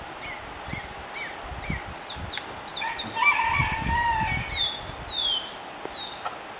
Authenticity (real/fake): real